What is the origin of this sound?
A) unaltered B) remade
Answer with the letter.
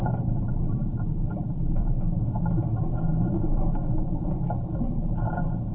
B